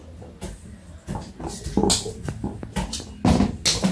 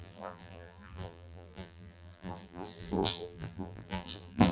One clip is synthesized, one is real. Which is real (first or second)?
first